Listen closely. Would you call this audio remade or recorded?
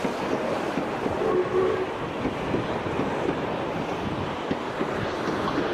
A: recorded